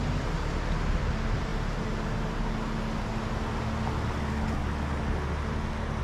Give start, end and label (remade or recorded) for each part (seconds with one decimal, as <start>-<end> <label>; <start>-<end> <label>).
0.0-6.0 recorded